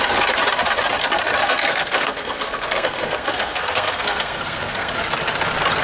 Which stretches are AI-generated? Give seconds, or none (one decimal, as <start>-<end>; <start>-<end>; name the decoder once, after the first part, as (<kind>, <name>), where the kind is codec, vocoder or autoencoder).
1.4-4.9 (codec, SNAC)